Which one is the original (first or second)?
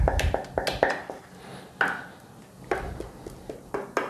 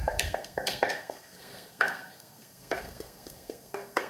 first